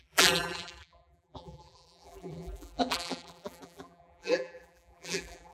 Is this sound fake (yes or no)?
yes